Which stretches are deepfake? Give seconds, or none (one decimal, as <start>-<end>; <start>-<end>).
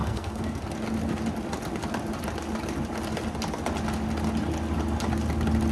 0.0-0.6